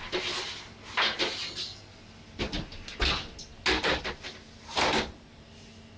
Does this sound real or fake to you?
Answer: real